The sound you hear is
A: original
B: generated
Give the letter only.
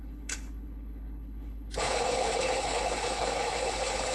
B